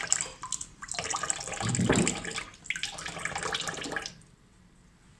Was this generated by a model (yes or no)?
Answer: no